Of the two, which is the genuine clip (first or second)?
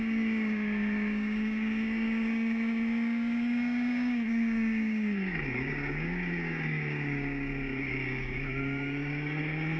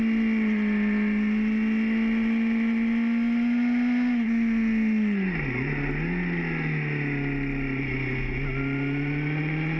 second